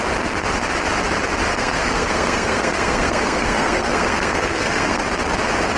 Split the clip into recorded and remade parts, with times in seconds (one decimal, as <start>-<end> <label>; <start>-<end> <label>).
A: 0.0-1.5 recorded; 1.5-5.0 remade; 5.0-5.8 recorded